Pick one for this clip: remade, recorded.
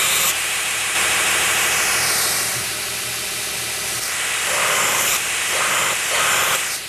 recorded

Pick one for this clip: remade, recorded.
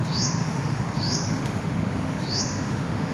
remade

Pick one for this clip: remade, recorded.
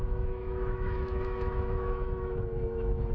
remade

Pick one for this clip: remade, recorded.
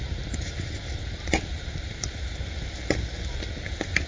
recorded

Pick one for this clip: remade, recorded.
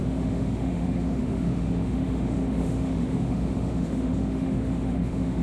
remade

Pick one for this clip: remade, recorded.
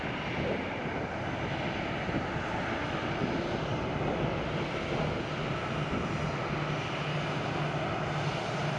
recorded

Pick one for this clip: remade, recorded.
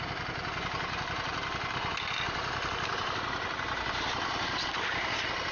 recorded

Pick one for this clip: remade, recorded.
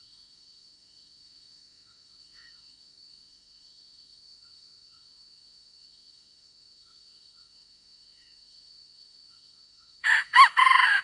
remade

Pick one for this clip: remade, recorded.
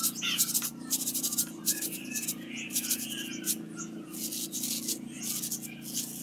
recorded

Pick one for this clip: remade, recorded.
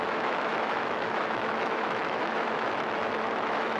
remade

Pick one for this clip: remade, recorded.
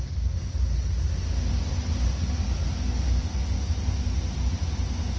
recorded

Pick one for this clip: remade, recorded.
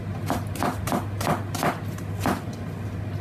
recorded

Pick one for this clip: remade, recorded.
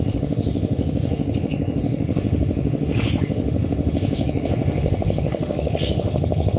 remade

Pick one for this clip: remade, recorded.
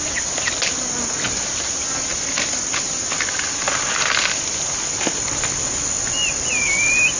recorded